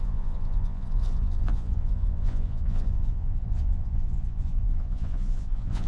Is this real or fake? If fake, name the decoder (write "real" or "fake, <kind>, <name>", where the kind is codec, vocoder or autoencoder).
fake, vocoder, Vocos